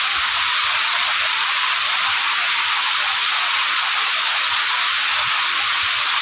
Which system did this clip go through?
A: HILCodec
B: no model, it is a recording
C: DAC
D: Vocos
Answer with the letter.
B